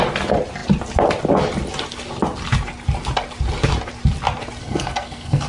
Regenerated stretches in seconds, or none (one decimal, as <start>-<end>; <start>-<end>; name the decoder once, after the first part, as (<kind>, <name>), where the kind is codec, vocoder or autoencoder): 4.6-5.5 (codec, SNAC)